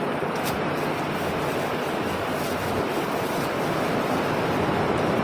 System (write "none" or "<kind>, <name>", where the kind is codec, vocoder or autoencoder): none